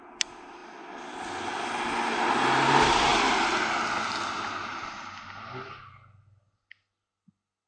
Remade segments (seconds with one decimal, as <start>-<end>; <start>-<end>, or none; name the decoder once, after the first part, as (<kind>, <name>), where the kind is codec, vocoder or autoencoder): none

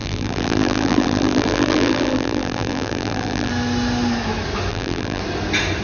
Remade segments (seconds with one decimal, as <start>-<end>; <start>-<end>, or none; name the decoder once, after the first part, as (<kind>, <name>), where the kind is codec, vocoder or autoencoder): 0.0-3.5 (vocoder, BigVGAN v2); 4.7-5.2

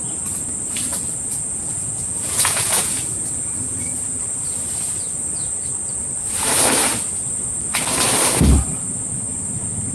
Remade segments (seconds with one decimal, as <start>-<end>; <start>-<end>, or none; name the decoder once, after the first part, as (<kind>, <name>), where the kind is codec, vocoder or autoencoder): 1.3-3.8 (vocoder, Vocos)

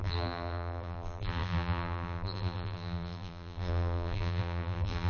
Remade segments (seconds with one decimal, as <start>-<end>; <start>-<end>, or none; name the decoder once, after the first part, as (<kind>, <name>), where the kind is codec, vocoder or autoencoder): 0.0-5.1 (vocoder, BigVGAN v2)

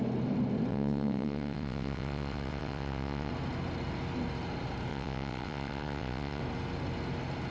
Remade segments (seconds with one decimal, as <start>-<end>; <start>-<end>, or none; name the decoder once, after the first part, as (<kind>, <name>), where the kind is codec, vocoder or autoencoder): 0.7-3.3 (vocoder, WaveNeXt); 4.9-6.4